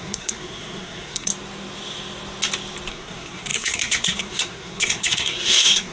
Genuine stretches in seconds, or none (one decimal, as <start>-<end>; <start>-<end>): 1.3-2.9